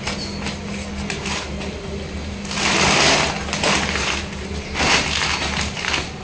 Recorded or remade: recorded